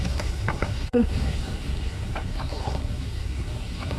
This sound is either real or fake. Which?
fake